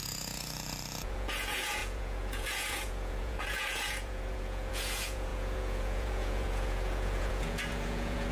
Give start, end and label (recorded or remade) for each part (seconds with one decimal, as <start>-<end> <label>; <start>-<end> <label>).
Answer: 0.0-8.3 remade